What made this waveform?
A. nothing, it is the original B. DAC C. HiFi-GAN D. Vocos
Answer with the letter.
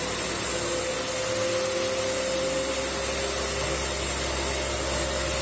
A